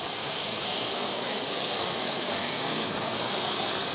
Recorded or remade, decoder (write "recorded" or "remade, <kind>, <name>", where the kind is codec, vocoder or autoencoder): remade, codec, SNAC